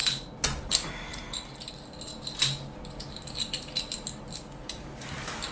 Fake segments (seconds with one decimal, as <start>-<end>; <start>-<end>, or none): none